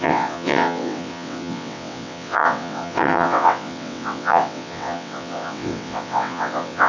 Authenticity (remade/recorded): remade